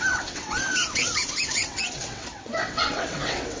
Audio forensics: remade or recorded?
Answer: remade